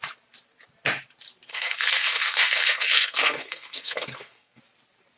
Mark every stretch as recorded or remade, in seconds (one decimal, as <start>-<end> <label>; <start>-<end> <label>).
0.0-1.5 recorded; 1.5-4.6 remade; 4.6-5.2 recorded